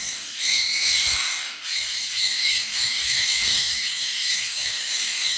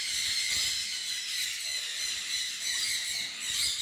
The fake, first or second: first